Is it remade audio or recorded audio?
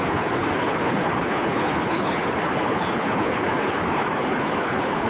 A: remade